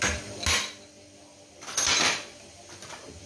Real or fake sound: real